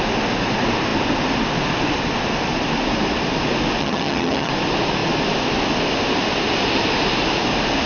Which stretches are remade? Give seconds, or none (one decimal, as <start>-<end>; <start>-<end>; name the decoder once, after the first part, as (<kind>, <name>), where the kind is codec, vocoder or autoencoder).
3.8-4.5 (vocoder, HiFi-GAN)